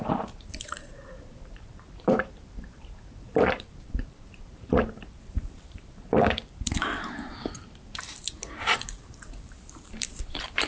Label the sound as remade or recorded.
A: remade